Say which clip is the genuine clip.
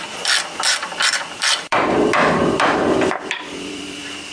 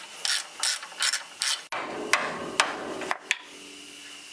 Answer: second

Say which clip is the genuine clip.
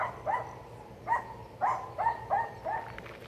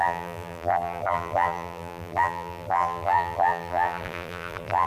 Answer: first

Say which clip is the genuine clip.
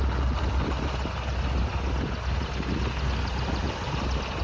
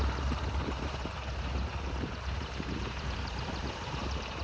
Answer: first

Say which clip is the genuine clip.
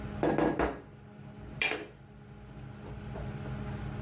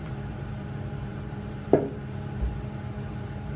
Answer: first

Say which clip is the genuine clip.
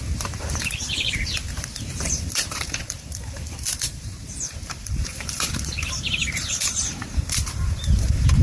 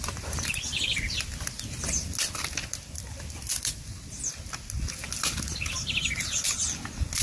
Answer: second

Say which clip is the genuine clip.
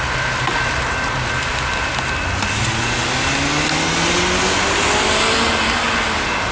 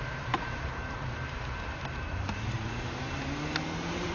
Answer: first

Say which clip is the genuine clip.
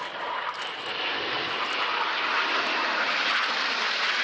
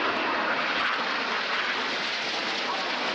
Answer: second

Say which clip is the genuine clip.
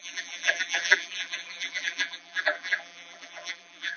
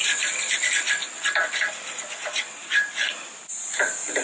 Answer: second